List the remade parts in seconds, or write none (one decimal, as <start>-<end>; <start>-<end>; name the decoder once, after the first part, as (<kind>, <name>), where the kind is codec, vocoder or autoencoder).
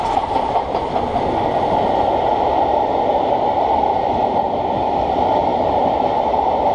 none